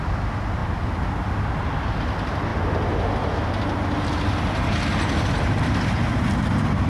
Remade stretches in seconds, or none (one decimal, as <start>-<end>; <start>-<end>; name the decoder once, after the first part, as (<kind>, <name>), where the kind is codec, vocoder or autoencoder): none